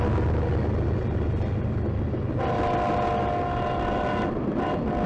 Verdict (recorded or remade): recorded